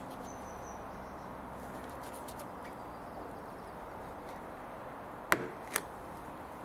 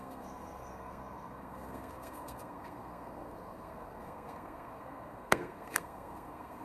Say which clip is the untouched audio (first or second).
first